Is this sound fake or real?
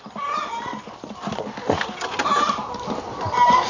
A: real